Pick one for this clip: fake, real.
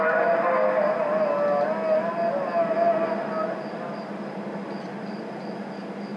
real